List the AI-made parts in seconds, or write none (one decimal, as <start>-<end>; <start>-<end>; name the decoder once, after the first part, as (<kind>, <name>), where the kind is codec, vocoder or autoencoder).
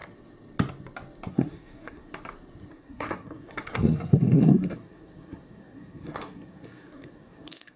1.3-2.1 (codec, SNAC); 2.7-7.8